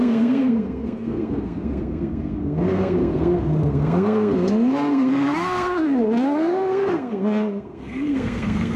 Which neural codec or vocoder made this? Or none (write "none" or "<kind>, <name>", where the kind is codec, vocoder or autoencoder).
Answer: codec, SNAC